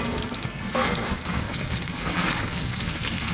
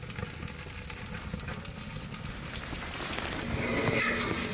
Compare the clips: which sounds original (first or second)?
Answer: second